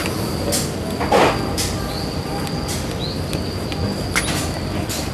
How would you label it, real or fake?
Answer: real